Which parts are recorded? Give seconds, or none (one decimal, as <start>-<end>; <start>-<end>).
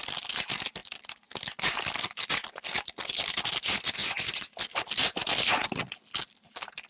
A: 0.0-4.0; 4.5-6.9